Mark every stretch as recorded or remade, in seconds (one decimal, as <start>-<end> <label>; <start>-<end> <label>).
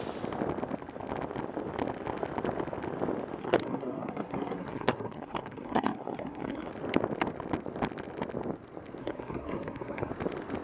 0.0-3.4 recorded; 3.4-6.7 remade; 6.7-9.0 recorded; 9.0-10.1 remade; 10.1-10.6 recorded